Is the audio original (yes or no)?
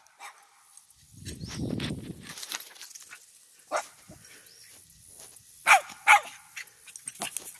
yes